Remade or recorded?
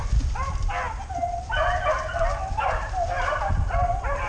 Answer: recorded